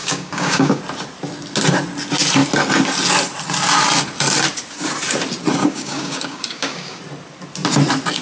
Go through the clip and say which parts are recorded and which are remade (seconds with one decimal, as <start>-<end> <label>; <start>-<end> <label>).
0.0-0.8 remade; 0.8-5.6 recorded; 5.6-7.0 remade; 7.0-8.2 recorded